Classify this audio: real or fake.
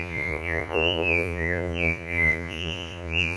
fake